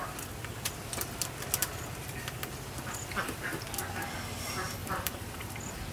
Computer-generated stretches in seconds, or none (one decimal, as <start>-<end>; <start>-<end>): 0.0-3.5; 4.8-5.5